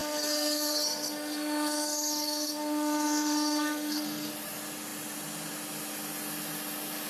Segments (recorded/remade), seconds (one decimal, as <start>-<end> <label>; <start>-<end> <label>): 0.0-4.3 remade; 4.3-7.1 recorded